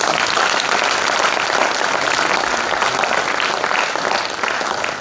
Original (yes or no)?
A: yes